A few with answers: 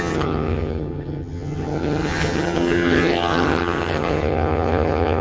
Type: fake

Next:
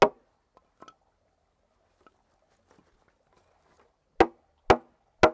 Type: real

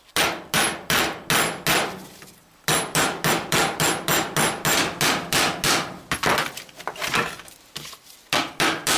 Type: real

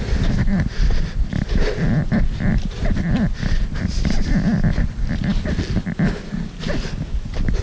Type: real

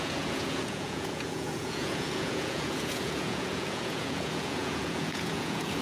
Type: fake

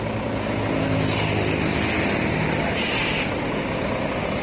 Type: real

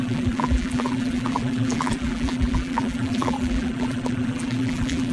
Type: fake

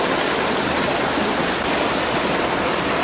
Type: real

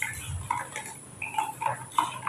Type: real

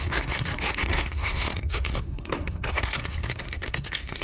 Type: fake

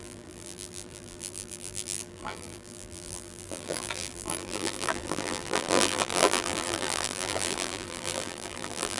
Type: fake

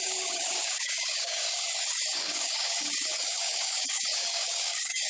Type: fake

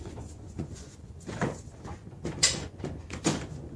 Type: fake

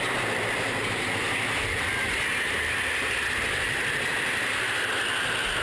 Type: real